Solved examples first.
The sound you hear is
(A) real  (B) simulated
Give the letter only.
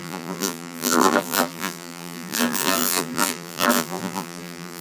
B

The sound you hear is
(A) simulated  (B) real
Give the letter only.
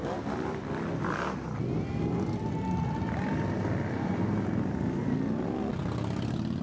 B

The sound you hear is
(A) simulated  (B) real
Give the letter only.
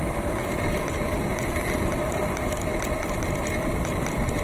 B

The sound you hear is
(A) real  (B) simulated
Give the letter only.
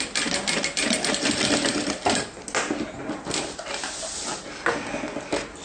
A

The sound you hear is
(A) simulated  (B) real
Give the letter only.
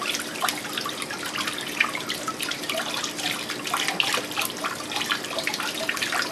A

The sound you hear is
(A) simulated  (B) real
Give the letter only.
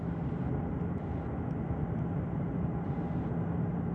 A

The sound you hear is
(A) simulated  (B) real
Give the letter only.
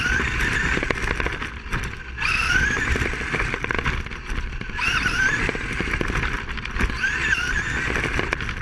B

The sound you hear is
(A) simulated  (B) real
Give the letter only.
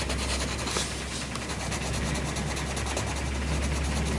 B